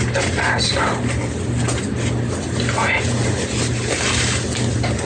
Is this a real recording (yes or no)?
yes